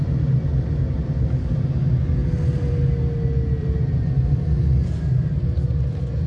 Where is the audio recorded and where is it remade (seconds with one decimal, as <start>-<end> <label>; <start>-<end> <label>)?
0.0-3.6 recorded; 3.6-4.1 remade; 4.1-6.3 recorded